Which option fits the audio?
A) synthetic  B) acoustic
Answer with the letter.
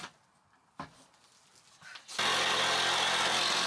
B